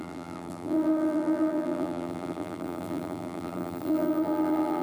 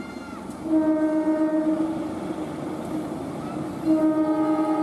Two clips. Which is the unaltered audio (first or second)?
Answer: second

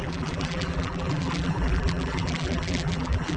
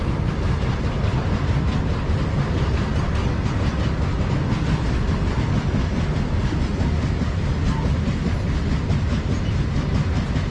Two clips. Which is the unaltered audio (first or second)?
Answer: second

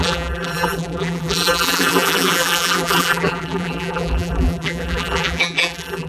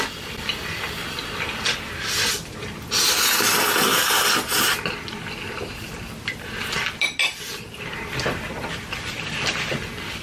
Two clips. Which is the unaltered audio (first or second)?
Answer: second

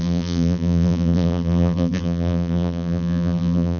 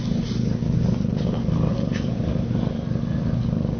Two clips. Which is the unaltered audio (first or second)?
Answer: second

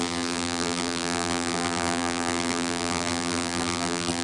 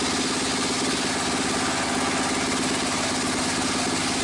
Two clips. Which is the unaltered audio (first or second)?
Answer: second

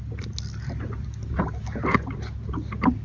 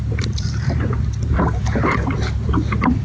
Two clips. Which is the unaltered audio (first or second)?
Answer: first